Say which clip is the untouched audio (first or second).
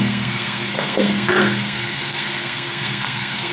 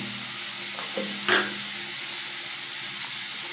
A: second